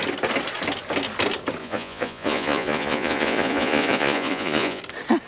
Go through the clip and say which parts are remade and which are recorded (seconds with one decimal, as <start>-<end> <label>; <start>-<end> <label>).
0.0-1.6 recorded; 1.6-4.8 remade; 4.8-5.3 recorded